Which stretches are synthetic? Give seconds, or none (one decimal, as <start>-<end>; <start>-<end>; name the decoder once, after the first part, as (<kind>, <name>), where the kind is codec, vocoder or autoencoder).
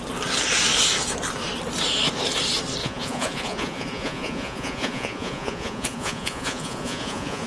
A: 2.8-7.5 (vocoder, Vocos)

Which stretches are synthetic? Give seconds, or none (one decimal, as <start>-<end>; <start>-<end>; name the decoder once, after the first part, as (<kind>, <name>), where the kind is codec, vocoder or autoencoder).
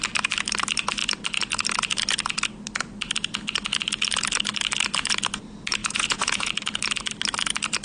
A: 5.8-6.5 (vocoder, Vocos)